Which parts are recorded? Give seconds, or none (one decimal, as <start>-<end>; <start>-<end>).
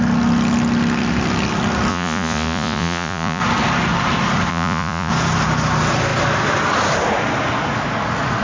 0.0-1.9; 3.4-4.5; 5.1-8.4